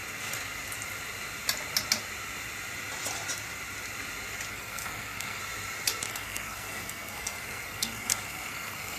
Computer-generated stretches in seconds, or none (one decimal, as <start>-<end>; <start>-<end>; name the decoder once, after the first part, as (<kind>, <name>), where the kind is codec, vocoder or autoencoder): 4.5-5.4 (codec, SNAC); 6.1-9.0